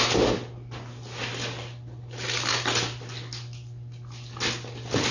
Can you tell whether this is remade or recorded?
recorded